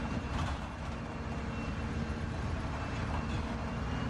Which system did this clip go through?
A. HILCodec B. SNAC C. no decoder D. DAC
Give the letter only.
C